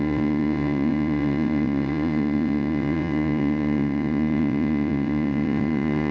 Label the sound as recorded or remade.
remade